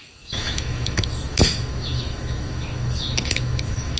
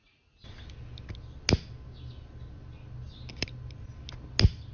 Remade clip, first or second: first